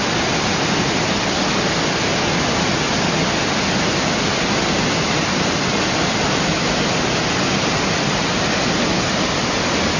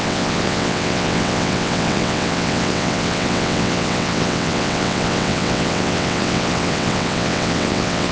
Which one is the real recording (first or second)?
first